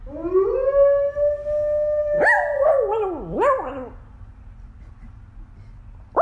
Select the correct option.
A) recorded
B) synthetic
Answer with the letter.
A